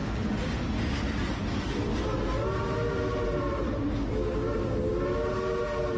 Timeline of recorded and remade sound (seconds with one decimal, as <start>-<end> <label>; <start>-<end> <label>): 0.0-6.0 recorded